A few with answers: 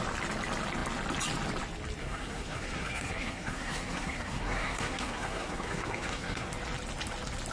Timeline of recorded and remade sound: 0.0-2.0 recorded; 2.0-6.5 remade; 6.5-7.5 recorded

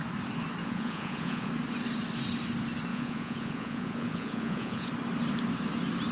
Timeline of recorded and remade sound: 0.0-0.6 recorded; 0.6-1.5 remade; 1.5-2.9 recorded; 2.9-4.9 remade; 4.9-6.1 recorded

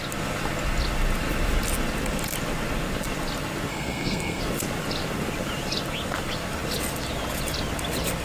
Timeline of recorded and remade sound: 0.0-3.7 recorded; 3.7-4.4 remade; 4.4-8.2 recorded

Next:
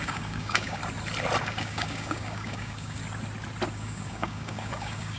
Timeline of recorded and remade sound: 0.0-0.8 remade; 0.8-1.4 recorded; 1.4-3.0 remade; 3.0-3.7 recorded; 3.7-5.2 remade

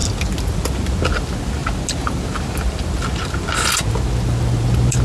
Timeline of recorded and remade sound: 0.0-5.0 recorded